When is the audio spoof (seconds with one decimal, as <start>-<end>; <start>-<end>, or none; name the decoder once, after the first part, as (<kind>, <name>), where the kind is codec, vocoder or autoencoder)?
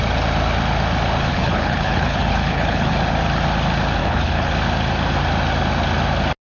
1.3-2.9 (codec, HILCodec); 4.0-4.5